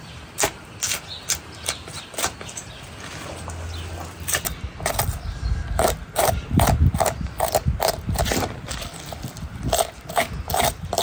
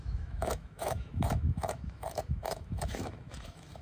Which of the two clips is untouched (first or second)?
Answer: first